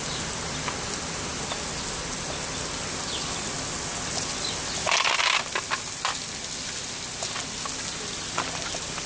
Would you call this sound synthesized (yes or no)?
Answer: no